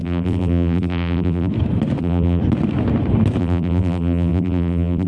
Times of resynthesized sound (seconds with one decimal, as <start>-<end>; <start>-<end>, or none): 0.0-1.5; 2.0-2.4; 3.4-5.1